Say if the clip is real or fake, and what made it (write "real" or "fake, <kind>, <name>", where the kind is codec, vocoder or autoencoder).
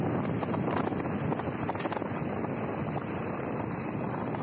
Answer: real